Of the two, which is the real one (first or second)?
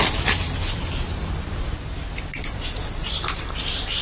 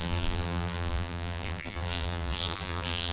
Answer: first